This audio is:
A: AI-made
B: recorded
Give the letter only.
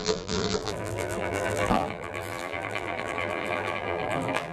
A